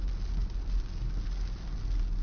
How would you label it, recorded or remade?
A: recorded